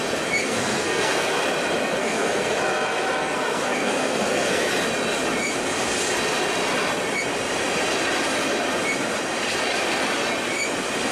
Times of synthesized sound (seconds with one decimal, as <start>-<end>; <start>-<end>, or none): 0.4-1.3; 1.8-2.6; 3.2-4.7